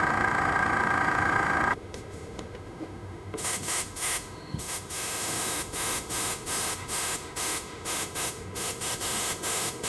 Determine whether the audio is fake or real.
fake